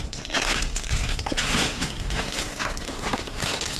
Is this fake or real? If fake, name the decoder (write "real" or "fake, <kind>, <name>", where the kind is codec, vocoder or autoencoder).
fake, codec, SNAC